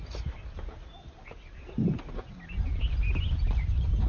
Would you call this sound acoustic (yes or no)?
yes